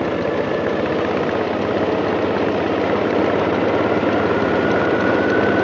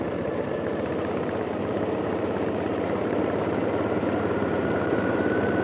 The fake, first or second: second